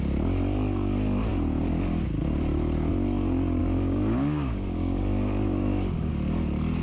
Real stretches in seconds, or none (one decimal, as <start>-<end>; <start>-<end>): 0.0-3.6; 6.1-6.8